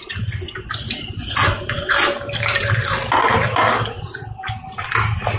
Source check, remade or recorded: recorded